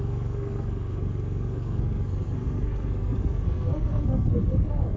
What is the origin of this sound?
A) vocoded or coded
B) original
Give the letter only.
A